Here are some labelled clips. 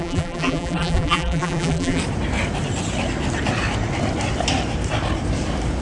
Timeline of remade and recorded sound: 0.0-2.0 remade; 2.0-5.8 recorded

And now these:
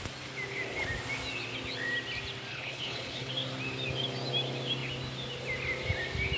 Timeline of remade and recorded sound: 0.0-2.5 recorded; 2.5-3.3 remade; 3.3-6.4 recorded

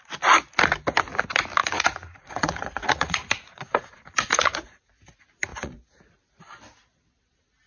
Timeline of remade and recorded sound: 0.0-1.6 recorded; 1.6-4.9 remade; 4.9-5.5 recorded; 5.5-6.0 remade; 6.0-7.7 recorded

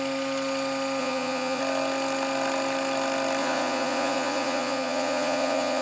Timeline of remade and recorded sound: 0.0-1.0 recorded; 1.0-1.6 remade; 1.6-3.4 recorded; 3.4-5.8 remade

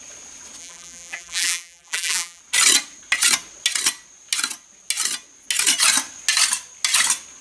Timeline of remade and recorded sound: 0.0-0.6 recorded; 0.6-2.4 remade; 2.4-7.4 recorded